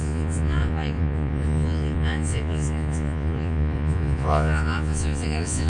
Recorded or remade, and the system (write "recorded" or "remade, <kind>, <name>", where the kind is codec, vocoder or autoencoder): remade, vocoder, Vocos